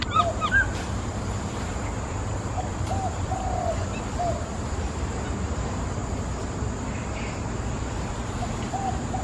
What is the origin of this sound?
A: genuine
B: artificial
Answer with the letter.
A